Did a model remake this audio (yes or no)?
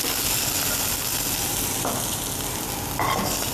no